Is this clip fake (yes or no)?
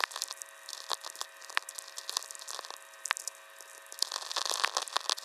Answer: no